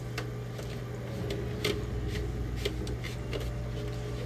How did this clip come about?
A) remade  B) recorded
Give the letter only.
B